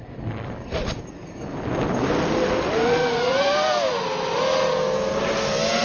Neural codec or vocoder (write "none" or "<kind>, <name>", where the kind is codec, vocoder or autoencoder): none